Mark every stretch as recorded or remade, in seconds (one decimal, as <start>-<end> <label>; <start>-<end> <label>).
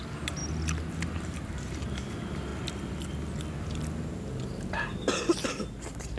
0.0-0.4 remade; 0.4-1.1 recorded; 1.1-2.5 remade; 2.5-5.5 recorded; 5.5-6.2 remade